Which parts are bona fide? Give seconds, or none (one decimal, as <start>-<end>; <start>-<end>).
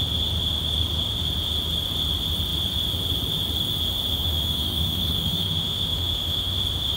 0.0-4.1; 6.5-7.0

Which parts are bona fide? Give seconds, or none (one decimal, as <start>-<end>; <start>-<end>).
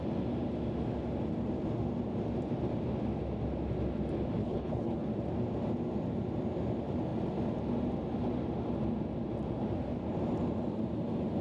0.0-4.4; 5.1-11.4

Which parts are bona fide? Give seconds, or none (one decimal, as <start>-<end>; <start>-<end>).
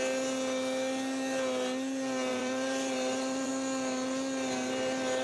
0.0-2.3; 3.5-5.2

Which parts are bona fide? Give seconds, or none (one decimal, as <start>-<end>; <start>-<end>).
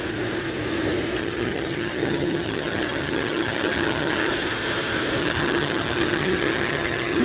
0.0-1.2; 4.3-5.2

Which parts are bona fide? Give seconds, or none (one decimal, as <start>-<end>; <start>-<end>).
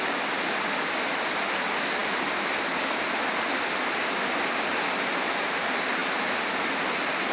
0.0-2.0; 3.6-7.3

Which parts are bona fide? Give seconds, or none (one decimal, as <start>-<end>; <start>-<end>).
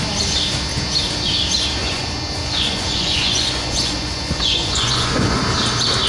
0.0-1.8; 5.4-6.1